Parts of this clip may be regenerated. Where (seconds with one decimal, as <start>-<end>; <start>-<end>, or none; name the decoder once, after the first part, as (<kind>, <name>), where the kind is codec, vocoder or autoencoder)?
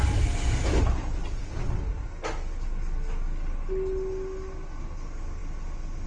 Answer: 1.2-1.8 (vocoder, WaveNeXt)